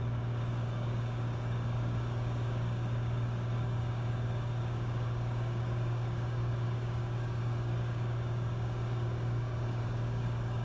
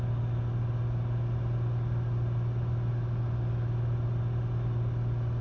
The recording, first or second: second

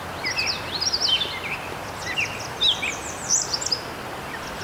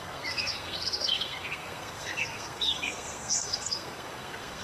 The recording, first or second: first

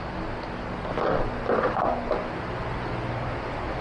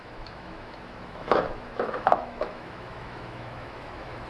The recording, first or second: first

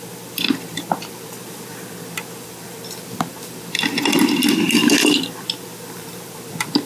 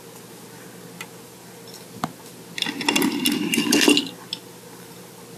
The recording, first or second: second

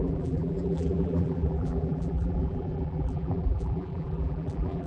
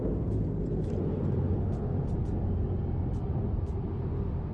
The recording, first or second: second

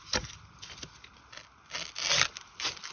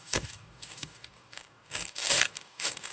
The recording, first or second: first